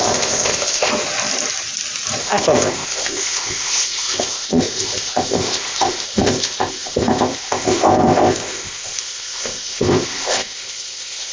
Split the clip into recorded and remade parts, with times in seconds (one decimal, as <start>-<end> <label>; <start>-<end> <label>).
0.0-0.9 remade; 0.9-2.2 recorded; 2.2-11.3 remade